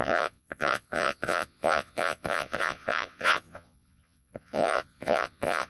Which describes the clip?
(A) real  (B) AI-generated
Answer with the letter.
B